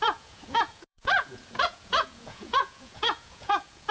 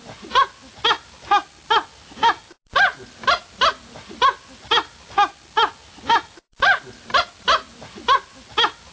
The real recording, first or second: second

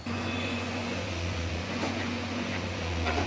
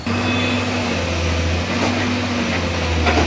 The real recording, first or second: second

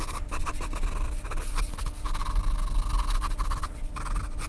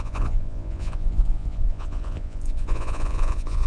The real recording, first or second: first